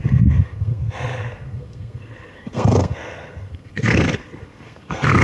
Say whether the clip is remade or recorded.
remade